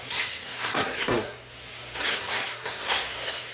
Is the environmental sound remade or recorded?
remade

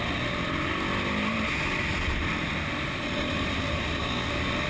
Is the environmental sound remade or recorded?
recorded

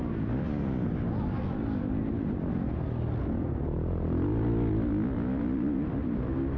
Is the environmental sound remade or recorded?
recorded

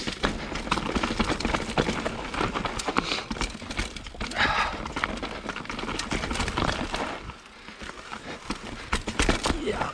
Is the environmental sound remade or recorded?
recorded